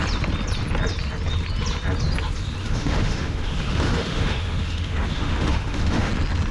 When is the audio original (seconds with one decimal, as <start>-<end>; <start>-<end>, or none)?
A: 0.0-2.6; 6.1-6.5